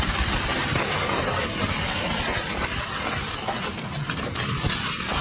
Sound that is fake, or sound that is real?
real